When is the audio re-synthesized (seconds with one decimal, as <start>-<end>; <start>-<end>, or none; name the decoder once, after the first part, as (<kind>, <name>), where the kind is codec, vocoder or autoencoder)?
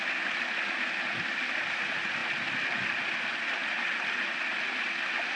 none